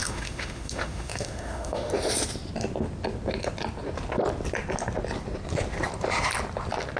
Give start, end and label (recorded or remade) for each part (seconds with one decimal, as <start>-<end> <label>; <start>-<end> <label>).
0.0-1.9 remade; 1.9-7.0 recorded